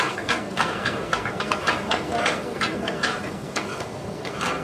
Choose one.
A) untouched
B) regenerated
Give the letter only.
B